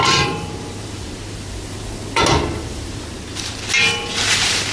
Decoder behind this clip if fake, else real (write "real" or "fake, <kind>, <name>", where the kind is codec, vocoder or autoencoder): fake, vocoder, BigVGAN v2